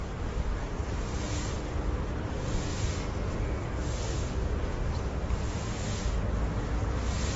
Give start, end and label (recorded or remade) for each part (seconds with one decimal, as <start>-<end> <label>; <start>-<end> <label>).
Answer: 0.0-1.2 remade; 1.2-7.4 recorded